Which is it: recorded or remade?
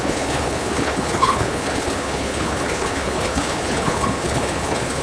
remade